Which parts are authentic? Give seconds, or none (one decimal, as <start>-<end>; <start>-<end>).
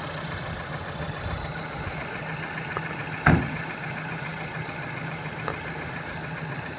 0.0-3.8; 4.3-6.3